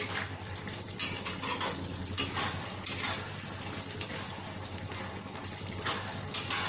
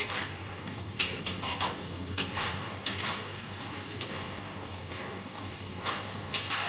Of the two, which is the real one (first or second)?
first